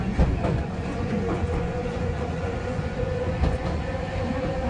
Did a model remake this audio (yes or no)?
yes